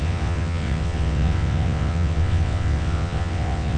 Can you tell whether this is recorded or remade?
remade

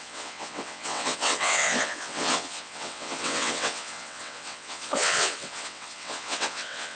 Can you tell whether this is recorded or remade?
remade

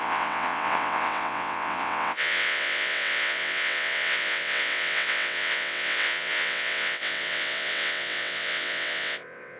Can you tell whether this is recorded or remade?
remade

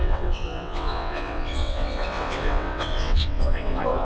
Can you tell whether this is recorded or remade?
remade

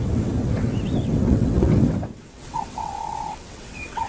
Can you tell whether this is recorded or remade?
remade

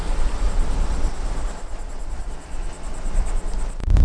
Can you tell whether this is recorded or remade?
recorded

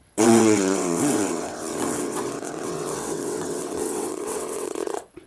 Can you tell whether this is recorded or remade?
remade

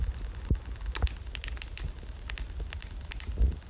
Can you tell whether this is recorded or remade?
recorded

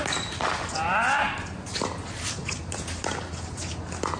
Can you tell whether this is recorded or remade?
recorded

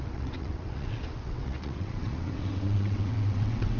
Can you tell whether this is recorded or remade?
remade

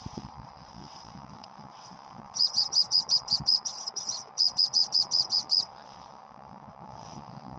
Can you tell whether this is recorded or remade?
remade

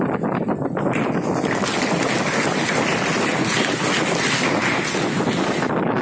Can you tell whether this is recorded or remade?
recorded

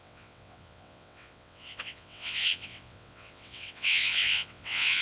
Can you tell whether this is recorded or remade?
remade